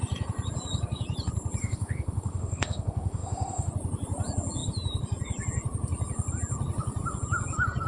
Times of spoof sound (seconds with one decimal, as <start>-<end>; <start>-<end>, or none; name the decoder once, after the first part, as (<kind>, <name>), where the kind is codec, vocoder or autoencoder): 1.6-3.7 (autoencoder, DAC-VAE)